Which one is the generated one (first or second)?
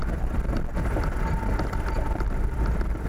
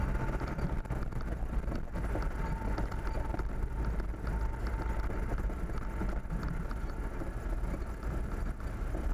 first